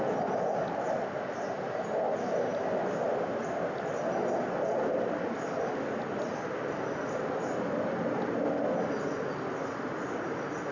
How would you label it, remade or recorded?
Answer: recorded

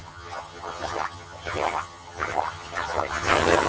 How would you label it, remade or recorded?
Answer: remade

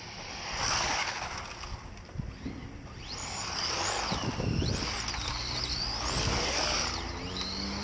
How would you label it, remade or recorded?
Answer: recorded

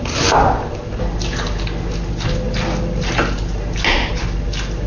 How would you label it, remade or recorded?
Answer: recorded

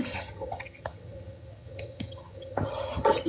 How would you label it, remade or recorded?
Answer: remade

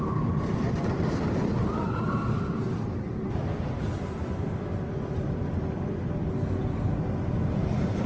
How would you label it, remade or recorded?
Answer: recorded